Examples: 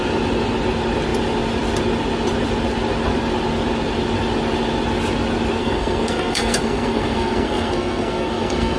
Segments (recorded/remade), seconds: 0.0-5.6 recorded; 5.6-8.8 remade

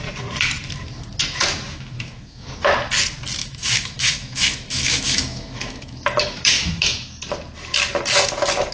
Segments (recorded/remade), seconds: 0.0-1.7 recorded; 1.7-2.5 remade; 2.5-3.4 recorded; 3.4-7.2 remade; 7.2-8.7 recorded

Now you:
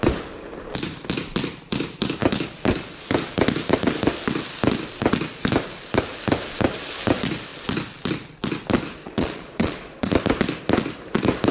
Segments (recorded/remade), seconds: 0.0-9.0 recorded; 9.0-10.1 remade; 10.1-11.5 recorded

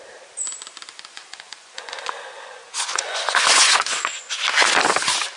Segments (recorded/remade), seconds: 0.0-1.1 recorded; 1.1-4.3 remade; 4.3-5.4 recorded

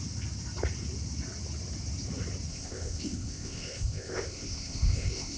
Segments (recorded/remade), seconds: 0.0-2.5 recorded; 2.5-5.4 remade